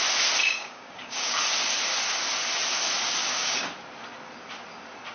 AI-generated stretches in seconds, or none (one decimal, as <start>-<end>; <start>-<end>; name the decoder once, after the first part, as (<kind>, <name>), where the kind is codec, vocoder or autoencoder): 0.4-1.4 (codec, DAC); 3.2-3.7